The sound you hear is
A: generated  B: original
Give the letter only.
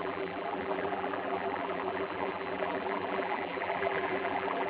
A